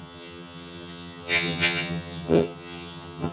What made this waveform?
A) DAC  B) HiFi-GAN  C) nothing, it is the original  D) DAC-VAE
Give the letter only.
B